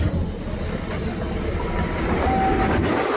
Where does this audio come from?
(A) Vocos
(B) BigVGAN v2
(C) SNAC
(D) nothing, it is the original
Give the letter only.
D